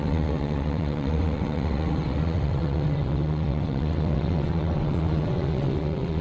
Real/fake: fake